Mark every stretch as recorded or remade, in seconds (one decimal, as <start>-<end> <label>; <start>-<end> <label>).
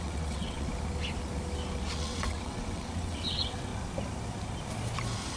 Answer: 0.0-0.7 remade; 0.7-1.9 recorded; 1.9-3.7 remade; 3.7-5.4 recorded